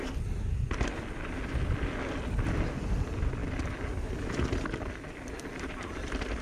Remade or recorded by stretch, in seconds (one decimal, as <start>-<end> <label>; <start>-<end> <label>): 0.0-6.4 recorded

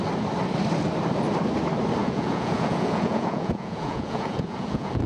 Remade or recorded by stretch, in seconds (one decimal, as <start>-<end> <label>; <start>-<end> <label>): 0.0-2.0 recorded; 2.0-5.1 remade